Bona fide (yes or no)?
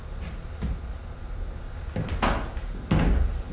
yes